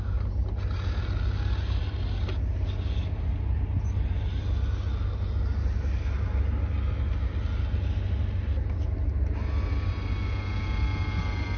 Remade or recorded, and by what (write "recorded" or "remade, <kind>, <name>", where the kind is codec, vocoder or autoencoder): recorded